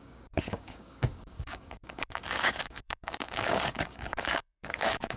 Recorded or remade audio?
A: remade